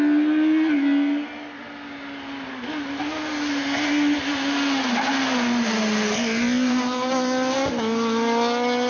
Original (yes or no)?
yes